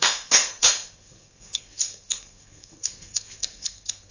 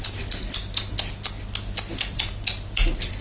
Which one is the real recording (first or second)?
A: second